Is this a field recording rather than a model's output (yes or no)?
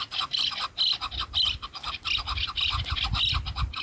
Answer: no